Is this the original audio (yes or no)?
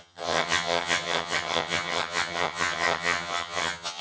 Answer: no